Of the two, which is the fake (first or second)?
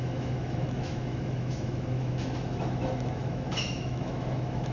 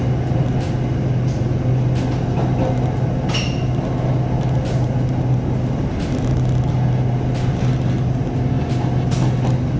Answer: first